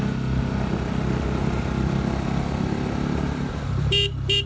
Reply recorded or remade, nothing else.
recorded